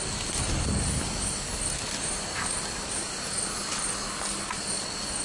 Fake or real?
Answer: real